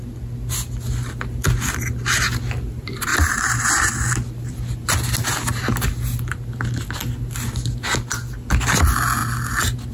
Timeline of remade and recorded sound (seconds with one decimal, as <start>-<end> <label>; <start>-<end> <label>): 0.0-3.1 recorded; 3.1-3.9 remade; 3.9-9.9 recorded

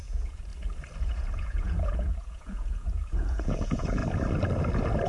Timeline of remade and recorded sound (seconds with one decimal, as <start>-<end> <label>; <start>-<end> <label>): 0.0-0.5 remade; 0.5-1.0 recorded; 1.0-4.0 remade; 4.0-5.1 recorded